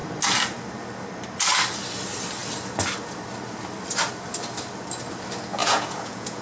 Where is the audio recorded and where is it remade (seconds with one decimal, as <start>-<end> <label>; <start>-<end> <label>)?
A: 0.0-5.6 recorded; 5.6-6.4 remade